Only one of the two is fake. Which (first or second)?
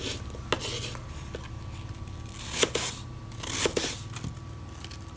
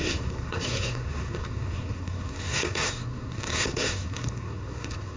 second